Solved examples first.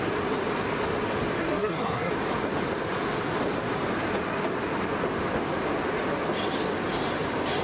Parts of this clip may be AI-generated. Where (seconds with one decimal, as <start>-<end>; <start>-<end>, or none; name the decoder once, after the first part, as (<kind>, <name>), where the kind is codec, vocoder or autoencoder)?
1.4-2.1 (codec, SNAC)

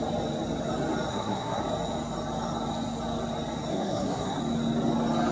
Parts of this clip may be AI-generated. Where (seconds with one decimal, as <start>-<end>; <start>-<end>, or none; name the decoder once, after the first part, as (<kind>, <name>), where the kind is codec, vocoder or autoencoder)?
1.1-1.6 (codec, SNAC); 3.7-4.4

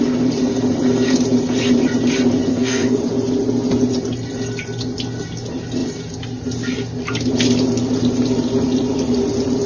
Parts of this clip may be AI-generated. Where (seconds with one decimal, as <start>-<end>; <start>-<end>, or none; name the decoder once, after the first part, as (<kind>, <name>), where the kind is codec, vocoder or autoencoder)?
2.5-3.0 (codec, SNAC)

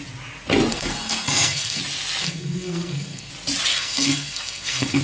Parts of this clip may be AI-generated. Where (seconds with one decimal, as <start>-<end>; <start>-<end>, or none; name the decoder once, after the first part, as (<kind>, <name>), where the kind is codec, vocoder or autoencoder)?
0.7-1.8 (codec, SNAC); 2.2-3.3; 3.7-5.0

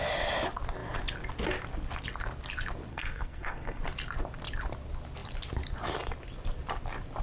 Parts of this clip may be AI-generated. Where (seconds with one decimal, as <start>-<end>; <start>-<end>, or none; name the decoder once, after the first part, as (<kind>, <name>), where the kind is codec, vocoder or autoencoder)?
2.9-3.8 (codec, SNAC)